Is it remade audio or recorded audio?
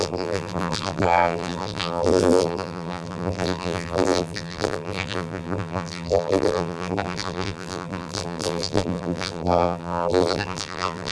remade